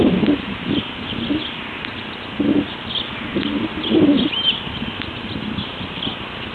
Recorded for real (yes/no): yes